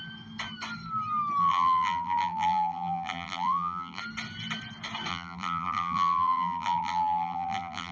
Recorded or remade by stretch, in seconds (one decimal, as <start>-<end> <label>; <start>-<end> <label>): 0.0-1.4 recorded; 1.4-4.0 remade; 4.0-5.1 recorded; 5.1-7.9 remade